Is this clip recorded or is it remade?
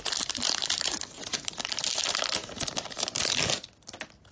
recorded